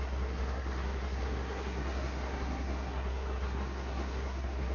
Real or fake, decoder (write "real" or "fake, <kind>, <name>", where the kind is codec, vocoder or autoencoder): fake, codec, SNAC